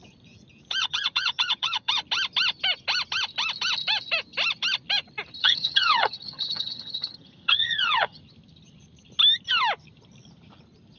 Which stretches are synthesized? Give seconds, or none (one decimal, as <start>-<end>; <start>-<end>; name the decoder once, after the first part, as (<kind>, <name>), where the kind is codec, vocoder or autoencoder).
0.8-1.9 (vocoder, HiFi-GAN); 5.4-8.2